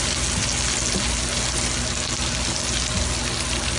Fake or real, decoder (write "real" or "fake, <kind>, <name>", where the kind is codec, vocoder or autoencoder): real